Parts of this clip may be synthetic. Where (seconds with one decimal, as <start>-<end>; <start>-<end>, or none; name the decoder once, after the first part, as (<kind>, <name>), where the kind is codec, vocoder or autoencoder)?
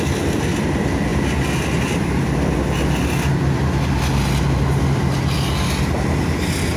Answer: none